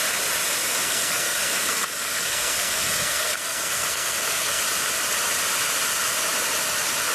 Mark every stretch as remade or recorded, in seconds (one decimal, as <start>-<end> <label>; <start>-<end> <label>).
0.0-0.6 recorded; 0.6-4.6 remade; 4.6-7.1 recorded